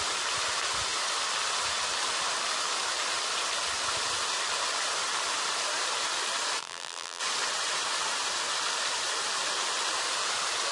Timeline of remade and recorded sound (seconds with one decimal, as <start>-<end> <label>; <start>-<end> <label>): 0.0-6.6 recorded; 6.6-7.2 remade; 7.2-10.7 recorded